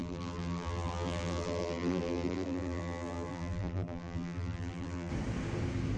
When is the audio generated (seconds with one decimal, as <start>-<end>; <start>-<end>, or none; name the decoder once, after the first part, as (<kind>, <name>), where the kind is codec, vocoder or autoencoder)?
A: 0.0-5.1 (vocoder, BigVGAN v2)

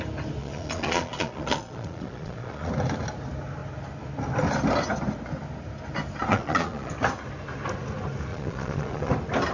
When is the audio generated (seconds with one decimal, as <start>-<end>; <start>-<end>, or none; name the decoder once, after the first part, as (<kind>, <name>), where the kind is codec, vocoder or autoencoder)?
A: 0.4-2.7 (vocoder, Vocos); 6.3-6.9; 8.3-9.1